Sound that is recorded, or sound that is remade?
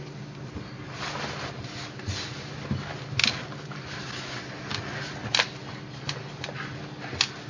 recorded